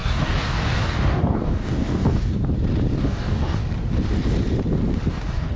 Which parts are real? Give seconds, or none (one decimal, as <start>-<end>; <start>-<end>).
2.4-3.0; 3.6-5.1